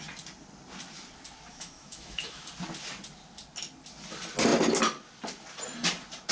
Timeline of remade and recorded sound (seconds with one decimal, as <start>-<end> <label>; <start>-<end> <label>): 0.0-1.5 recorded; 1.5-2.5 remade; 2.5-6.3 recorded